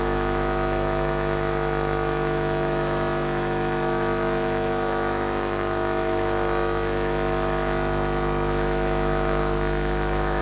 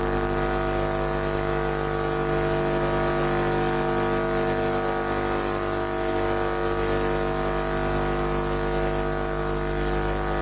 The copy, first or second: first